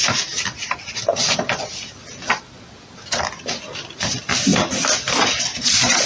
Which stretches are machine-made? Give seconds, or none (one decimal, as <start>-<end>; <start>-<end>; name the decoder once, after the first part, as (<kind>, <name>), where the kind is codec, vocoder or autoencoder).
none